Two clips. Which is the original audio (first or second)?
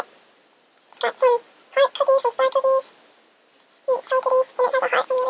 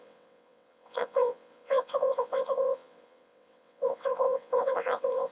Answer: first